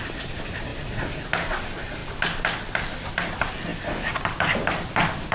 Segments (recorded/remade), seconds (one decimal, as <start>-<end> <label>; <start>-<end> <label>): 0.0-0.7 recorded; 0.7-1.5 remade; 1.5-3.7 recorded; 3.7-4.3 remade; 4.3-5.3 recorded